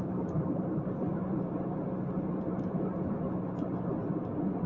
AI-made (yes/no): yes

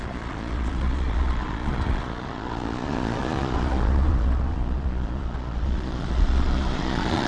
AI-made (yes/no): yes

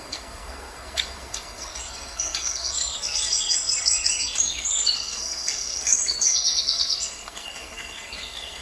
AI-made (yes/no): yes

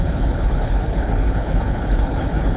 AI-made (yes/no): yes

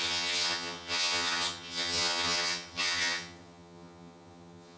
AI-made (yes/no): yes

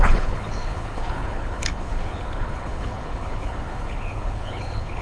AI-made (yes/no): yes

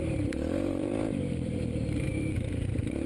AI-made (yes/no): yes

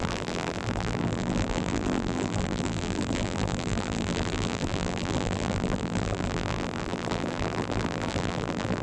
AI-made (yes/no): yes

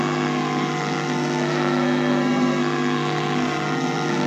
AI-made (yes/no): yes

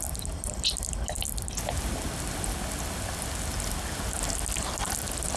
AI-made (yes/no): no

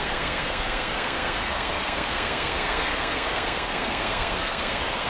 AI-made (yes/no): yes